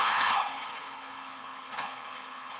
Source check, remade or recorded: remade